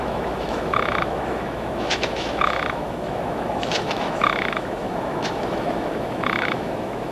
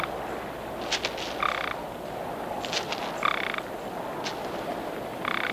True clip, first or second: second